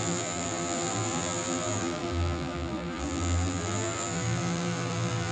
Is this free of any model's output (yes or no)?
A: no